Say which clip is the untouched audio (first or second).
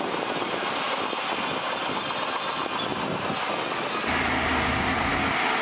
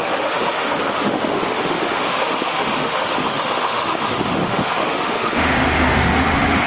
first